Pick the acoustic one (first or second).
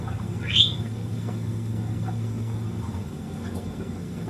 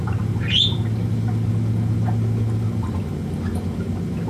second